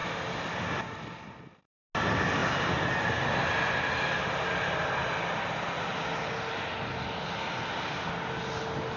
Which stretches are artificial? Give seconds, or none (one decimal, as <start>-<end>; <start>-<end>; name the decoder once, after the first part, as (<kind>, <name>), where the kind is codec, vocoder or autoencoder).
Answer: none